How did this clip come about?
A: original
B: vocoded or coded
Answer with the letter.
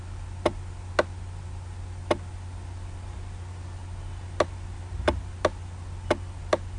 A